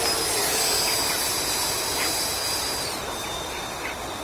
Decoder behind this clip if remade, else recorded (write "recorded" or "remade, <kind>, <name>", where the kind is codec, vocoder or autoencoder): recorded